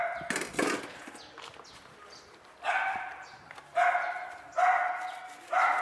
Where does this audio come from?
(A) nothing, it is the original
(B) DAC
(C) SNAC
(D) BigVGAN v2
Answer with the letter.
A